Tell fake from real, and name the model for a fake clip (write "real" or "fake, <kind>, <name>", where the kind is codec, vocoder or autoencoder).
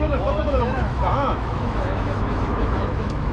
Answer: fake, autoencoder, DAC-VAE